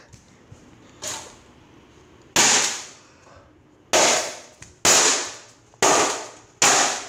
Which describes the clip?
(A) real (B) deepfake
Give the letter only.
A